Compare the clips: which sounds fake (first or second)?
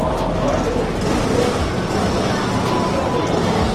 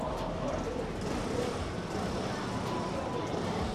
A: second